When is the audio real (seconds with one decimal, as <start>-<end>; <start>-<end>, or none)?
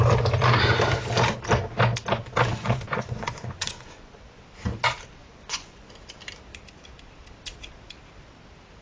0.0-2.5; 4.4-5.2; 5.9-8.8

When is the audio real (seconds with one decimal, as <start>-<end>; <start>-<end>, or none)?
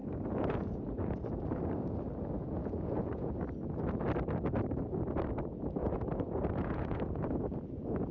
1.6-2.6; 3.3-5.8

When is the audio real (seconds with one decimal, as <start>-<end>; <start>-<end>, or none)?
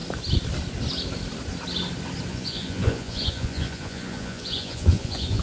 0.0-2.3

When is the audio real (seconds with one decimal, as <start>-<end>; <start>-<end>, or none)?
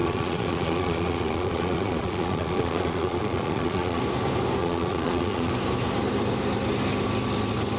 4.0-4.6; 5.5-7.8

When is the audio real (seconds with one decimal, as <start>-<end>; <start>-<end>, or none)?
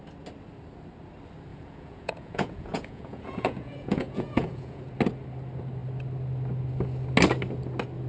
0.0-1.5; 4.8-8.1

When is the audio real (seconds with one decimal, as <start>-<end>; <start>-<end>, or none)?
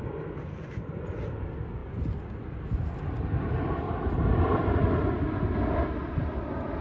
0.0-6.8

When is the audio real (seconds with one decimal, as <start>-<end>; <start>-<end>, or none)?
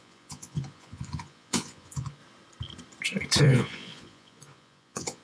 2.2-3.4